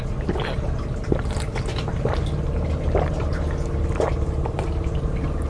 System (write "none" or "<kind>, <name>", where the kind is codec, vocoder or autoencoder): none